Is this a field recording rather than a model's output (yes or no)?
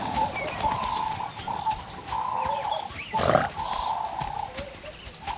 yes